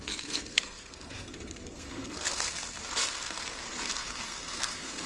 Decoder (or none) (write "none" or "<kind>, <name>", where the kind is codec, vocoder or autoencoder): codec, SNAC